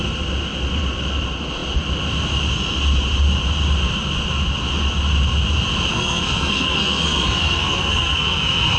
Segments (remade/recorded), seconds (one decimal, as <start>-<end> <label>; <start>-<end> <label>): 0.0-5.9 recorded; 5.9-8.8 remade